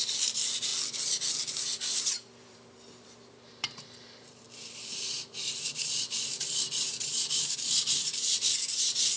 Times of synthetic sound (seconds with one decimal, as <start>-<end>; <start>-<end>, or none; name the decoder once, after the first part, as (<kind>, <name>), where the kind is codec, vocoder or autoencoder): 0.0-0.7 (vocoder, BigVGAN v2); 1.3-9.2

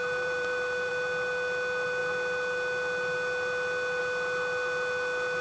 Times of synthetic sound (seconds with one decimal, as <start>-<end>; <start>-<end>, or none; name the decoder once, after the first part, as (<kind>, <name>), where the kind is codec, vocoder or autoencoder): 0.0-0.9 (vocoder, BigVGAN v2)

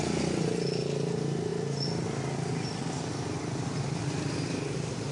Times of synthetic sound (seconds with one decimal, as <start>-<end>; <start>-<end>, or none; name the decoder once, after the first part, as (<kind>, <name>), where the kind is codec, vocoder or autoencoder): none